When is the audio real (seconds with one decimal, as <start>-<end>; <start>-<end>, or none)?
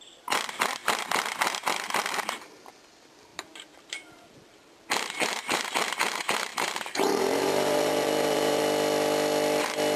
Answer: 0.0-3.3; 5.6-6.5; 8.6-10.0